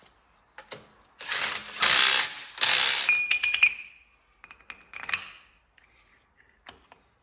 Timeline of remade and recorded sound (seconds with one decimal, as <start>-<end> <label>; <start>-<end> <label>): 0.0-7.2 recorded